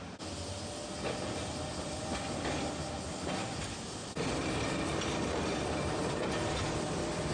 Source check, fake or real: real